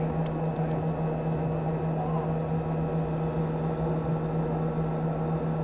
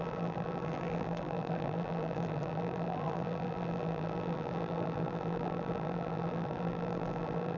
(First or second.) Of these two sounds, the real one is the first